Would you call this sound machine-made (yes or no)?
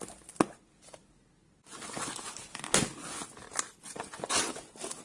no